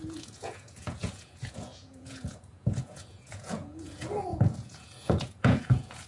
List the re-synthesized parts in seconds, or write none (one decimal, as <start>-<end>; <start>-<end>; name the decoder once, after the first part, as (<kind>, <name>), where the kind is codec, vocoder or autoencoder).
0.0-6.1 (vocoder, Vocos)